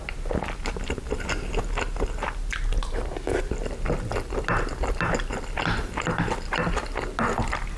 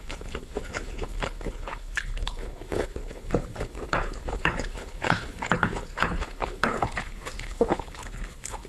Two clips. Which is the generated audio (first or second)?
second